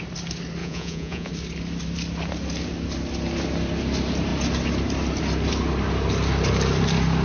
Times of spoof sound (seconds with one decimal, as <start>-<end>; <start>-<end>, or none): 0.6-1.3